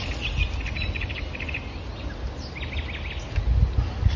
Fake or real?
real